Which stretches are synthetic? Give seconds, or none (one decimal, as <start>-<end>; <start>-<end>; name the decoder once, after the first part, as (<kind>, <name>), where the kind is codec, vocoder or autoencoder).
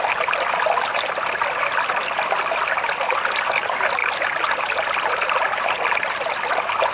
0.0-4.0 (vocoder, BigVGAN v2); 5.1-6.9